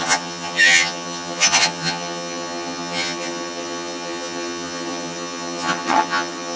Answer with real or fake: fake